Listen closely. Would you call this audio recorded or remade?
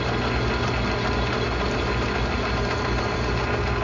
recorded